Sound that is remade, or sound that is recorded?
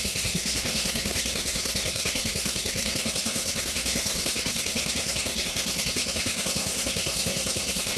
remade